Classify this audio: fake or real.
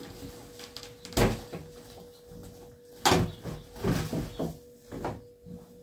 real